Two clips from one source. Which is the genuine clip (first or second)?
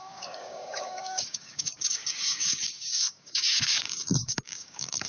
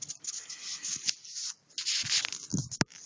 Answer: second